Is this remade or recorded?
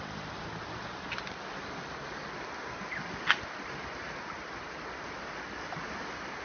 recorded